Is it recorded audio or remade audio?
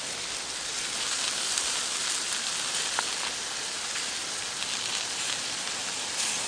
recorded